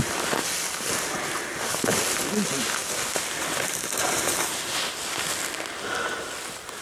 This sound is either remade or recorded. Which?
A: recorded